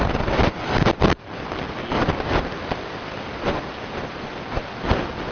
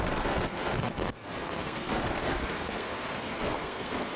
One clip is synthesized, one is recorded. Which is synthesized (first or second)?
second